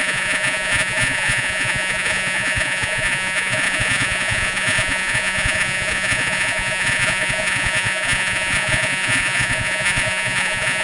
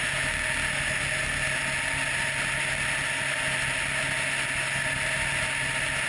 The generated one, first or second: first